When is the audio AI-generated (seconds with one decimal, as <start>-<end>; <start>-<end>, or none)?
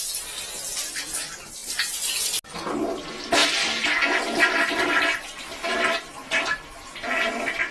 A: none